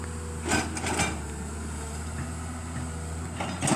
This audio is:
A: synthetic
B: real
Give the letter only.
B